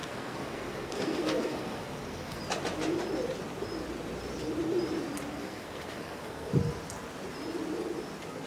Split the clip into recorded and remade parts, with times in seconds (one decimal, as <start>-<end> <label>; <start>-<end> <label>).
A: 0.0-2.4 remade; 2.4-5.3 recorded; 5.3-6.5 remade; 6.5-8.5 recorded